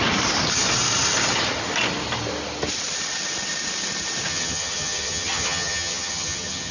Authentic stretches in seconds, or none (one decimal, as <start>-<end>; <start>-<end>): 0.0-4.3